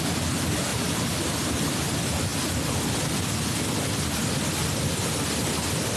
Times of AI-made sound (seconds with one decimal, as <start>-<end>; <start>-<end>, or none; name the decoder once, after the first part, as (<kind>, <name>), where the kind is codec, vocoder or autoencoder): none